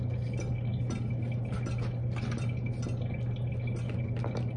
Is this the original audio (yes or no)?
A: yes